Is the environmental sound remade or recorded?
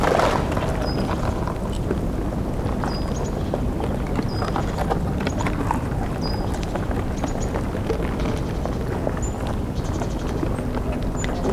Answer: recorded